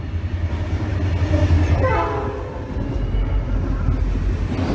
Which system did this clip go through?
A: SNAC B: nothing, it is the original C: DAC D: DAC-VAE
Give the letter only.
B